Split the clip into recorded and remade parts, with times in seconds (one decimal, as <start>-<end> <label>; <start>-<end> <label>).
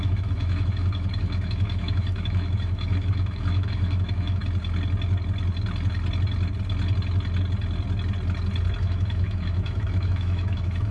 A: 0.0-4.4 remade; 4.4-8.8 recorded; 8.8-10.9 remade